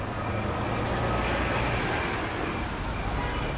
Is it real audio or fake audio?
real